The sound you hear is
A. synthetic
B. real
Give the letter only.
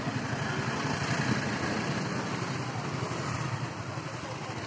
A